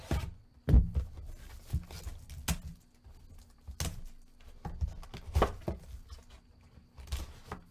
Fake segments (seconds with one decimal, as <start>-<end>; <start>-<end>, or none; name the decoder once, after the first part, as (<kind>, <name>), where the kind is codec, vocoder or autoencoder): none